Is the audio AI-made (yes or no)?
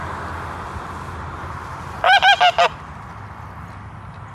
no